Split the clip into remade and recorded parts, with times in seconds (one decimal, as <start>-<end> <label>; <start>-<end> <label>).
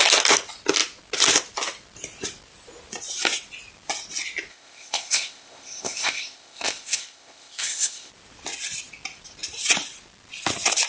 0.0-4.5 recorded; 4.5-8.1 remade; 8.1-10.9 recorded